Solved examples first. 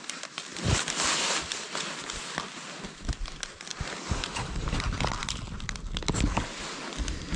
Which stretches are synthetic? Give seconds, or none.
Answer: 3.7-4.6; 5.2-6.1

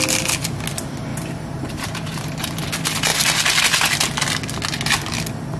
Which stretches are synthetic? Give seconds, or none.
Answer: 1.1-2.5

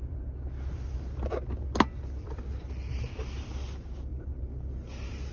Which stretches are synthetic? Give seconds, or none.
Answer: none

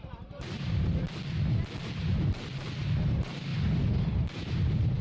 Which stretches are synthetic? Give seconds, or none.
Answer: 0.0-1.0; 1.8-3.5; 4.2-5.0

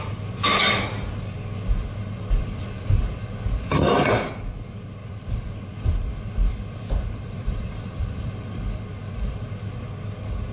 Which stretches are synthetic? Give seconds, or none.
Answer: 2.4-4.3; 5.0-9.7

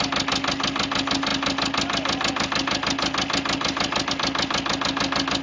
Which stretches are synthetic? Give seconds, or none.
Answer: none

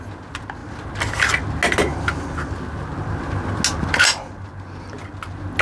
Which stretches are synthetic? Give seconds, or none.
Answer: none

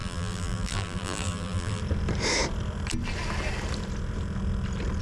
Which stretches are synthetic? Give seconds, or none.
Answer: 0.0-1.8